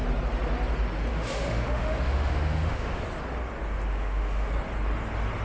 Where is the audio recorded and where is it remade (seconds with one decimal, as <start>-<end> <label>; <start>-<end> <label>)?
0.0-1.1 recorded; 1.1-3.0 remade; 3.0-3.9 recorded; 3.9-4.5 remade; 4.5-5.4 recorded